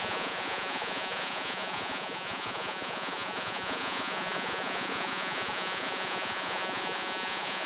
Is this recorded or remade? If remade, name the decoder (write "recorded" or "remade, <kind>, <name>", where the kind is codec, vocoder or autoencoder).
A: remade, vocoder, Vocos